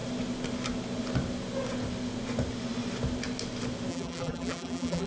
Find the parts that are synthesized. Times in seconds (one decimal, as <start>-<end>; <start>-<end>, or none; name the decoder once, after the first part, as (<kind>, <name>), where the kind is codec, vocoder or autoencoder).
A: 3.9-5.1 (vocoder, BigVGAN v2)